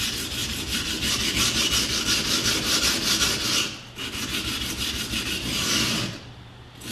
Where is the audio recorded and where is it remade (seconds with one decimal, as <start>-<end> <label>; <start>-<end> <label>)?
0.0-0.4 recorded; 0.4-1.2 remade; 1.2-6.9 recorded